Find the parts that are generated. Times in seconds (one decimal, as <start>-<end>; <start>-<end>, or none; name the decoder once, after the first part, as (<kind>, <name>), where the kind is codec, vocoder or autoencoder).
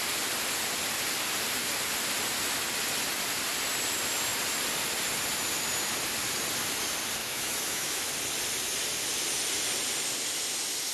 7.2-8.1 (autoencoder, DAC-VAE)